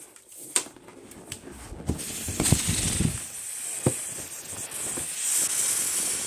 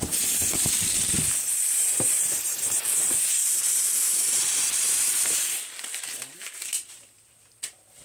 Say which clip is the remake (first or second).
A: second